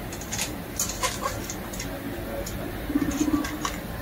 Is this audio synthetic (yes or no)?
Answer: no